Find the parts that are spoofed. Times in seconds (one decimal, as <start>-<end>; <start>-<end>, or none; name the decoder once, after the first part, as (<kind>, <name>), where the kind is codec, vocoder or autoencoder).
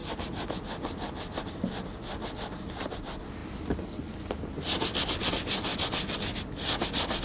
none